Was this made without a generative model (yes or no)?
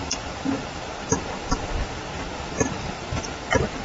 yes